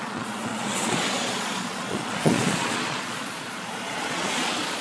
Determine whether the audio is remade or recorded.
remade